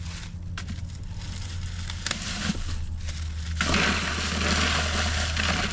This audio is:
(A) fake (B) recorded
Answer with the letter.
B